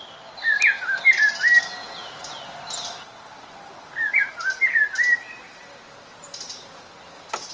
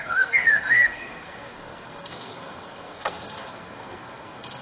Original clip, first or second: first